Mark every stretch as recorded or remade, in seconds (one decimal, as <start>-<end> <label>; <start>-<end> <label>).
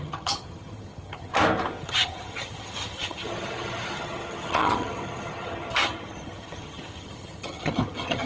0.0-1.3 remade; 1.3-1.8 recorded; 1.8-8.3 remade